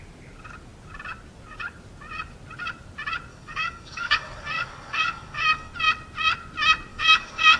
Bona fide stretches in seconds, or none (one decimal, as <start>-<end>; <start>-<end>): 0.0-3.3; 5.7-6.9